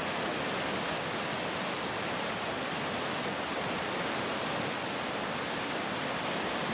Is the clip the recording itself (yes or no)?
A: yes